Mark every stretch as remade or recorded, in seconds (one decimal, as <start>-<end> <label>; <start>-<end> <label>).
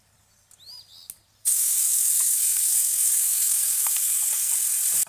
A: 0.0-1.4 recorded; 1.4-4.5 remade; 4.5-5.1 recorded